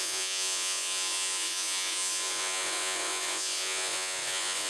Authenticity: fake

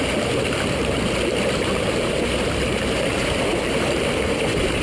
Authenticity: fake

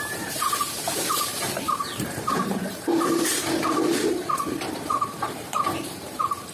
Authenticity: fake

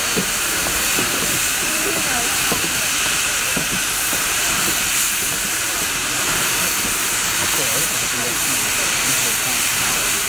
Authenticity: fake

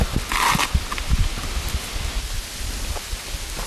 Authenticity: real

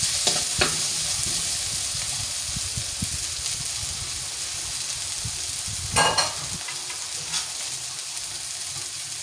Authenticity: real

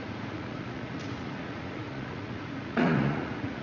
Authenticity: fake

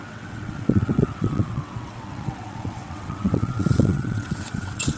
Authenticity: fake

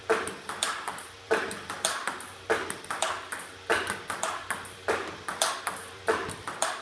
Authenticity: fake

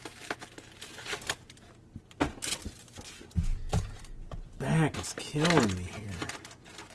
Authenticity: real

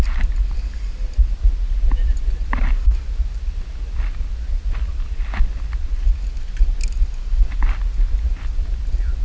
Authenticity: real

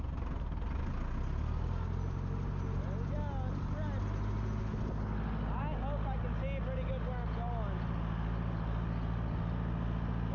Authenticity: real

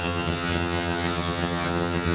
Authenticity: fake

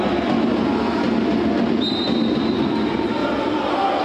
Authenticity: real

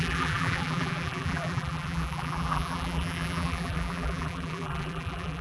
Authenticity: fake